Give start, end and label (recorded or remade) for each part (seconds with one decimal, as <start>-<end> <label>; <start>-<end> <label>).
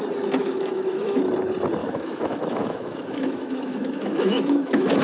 0.0-0.4 recorded; 0.4-1.2 remade; 1.2-1.8 recorded; 1.8-5.0 remade